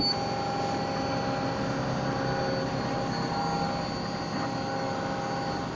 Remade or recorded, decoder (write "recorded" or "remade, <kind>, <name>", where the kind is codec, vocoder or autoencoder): recorded